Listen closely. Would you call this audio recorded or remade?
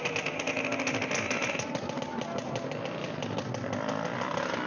recorded